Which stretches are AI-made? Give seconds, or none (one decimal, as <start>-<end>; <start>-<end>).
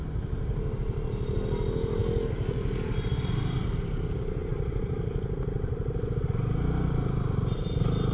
4.5-5.4